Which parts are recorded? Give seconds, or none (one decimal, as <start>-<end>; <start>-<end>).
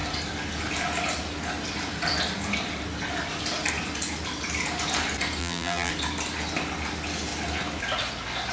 0.0-5.4; 5.9-8.5